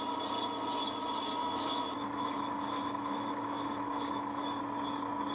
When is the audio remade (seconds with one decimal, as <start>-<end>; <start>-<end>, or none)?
1.4-4.6